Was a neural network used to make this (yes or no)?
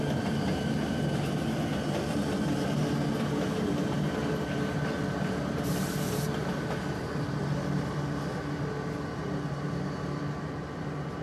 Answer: no